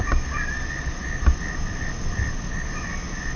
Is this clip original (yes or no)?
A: yes